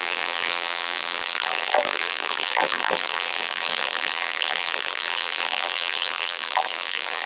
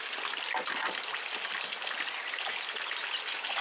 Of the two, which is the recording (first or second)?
second